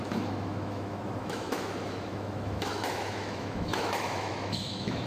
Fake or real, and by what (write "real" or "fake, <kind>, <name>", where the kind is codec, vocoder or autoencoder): fake, autoencoder, DAC-VAE